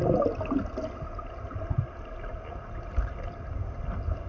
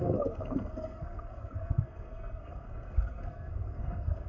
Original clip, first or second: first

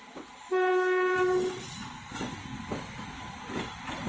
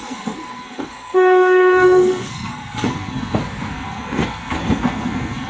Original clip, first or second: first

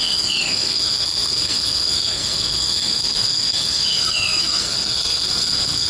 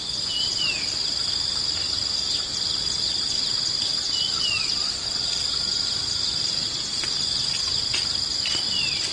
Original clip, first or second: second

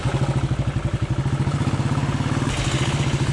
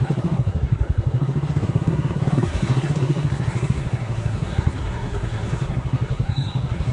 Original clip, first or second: first